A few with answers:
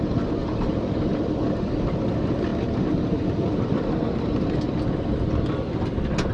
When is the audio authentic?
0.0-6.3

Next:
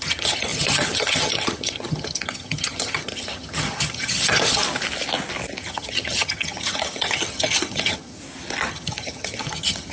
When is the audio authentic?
4.6-5.6; 8.2-8.7

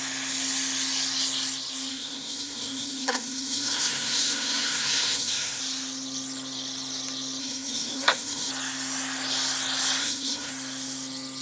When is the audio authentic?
0.0-1.9; 5.6-7.4; 8.5-10.0; 10.5-11.4